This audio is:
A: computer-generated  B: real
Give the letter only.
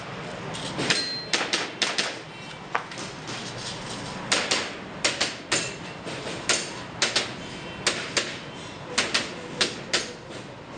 B